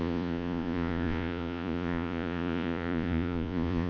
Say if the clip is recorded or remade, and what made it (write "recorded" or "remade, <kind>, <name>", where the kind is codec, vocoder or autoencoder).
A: remade, vocoder, Vocos